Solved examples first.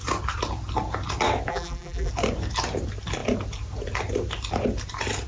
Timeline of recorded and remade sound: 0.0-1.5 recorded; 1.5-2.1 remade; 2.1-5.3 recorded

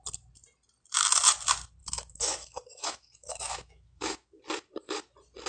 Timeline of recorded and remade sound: 0.0-1.8 recorded; 1.8-4.4 remade; 4.4-5.5 recorded